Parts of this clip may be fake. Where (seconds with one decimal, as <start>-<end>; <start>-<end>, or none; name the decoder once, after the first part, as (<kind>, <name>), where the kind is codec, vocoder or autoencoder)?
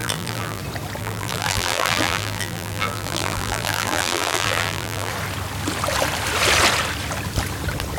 0.0-0.6 (vocoder, BigVGAN v2); 1.0-5.1